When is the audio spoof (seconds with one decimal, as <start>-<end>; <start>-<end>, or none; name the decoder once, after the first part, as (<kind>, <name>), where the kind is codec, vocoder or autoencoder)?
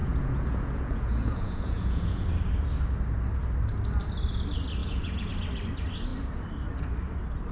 0.0-2.2 (vocoder, Vocos); 4.8-5.3